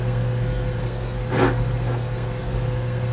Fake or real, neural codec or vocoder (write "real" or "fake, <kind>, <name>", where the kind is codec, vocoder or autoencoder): fake, codec, SNAC